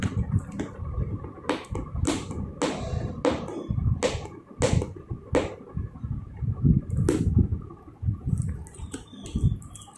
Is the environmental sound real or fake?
real